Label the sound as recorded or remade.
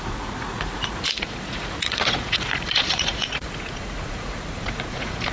remade